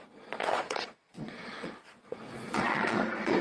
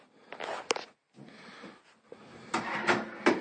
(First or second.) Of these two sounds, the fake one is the first